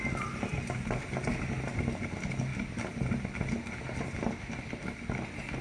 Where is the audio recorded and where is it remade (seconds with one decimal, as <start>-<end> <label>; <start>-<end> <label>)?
0.0-0.5 recorded; 0.5-1.2 remade; 1.2-2.5 recorded; 2.5-4.5 remade; 4.5-5.6 recorded